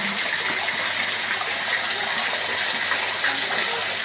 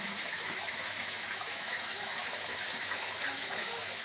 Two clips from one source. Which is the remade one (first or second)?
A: second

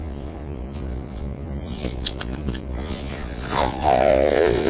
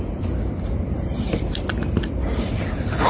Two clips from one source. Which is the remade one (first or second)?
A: first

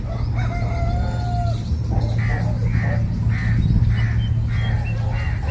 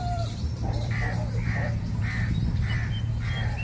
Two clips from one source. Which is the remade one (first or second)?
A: second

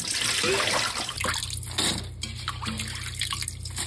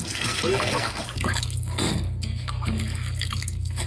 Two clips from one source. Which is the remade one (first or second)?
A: second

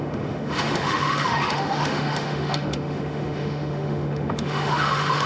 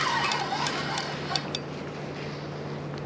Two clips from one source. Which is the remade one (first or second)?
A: first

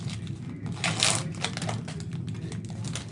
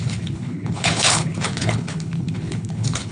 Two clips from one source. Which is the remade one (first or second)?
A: second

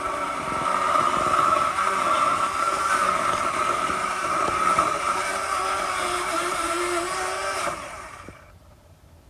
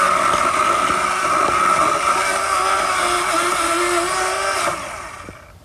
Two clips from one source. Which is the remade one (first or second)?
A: first